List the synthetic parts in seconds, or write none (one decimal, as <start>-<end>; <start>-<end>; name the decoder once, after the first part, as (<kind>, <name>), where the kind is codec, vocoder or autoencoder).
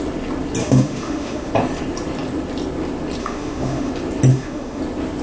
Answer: 0.6-1.5 (autoencoder, DAC-VAE); 3.2-3.9; 4.3-4.8